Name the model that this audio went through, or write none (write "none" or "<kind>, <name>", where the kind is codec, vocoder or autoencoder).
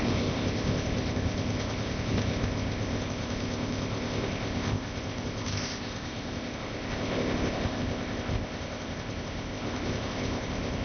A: codec, ZipCodec